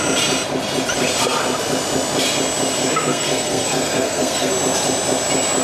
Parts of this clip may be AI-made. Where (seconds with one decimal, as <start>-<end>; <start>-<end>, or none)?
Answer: 3.1-4.5